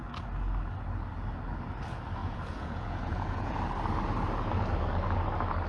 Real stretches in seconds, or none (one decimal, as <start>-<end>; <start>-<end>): 0.0-2.2; 3.5-5.7